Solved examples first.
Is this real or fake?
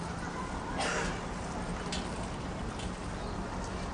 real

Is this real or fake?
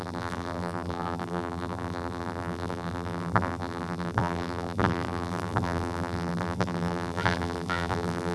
fake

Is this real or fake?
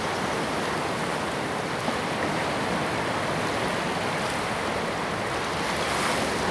real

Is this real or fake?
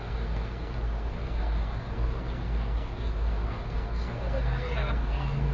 fake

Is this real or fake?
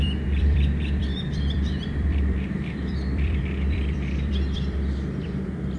fake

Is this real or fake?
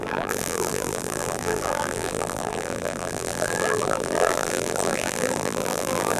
fake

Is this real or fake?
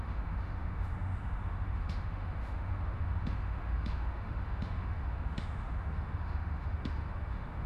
fake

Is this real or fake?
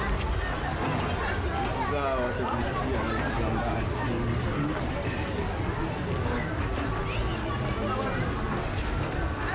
real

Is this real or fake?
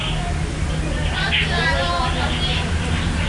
real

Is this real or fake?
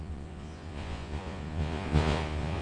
fake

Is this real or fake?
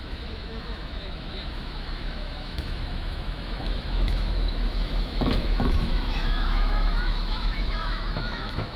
fake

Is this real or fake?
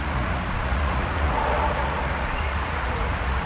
fake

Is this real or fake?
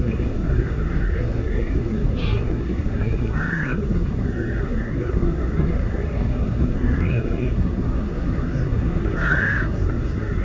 fake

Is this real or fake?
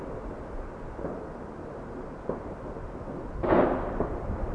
real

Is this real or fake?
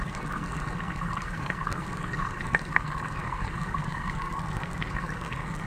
fake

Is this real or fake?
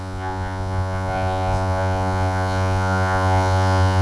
fake